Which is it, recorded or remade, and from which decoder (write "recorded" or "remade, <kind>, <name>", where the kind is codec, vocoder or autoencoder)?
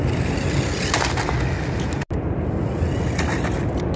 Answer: recorded